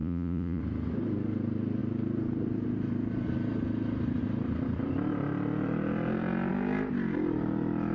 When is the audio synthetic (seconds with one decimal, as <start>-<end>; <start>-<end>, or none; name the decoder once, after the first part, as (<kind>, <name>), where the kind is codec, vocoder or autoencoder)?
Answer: 0.0-0.6 (vocoder, Vocos)